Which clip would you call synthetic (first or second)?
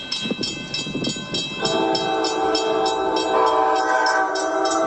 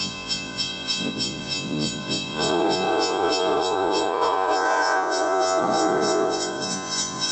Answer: second